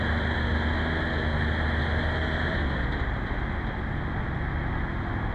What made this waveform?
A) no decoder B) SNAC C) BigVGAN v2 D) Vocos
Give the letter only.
A